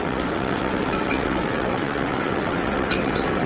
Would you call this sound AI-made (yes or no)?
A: yes